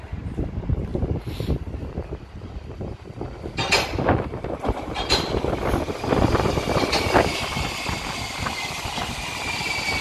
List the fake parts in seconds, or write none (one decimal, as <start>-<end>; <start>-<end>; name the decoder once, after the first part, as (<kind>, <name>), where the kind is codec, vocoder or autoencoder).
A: none